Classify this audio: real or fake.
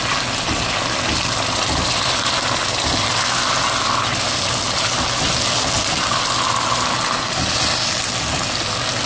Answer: real